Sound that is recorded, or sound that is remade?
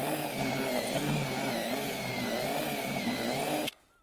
recorded